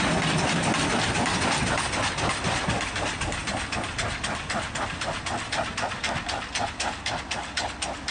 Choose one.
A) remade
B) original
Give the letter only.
B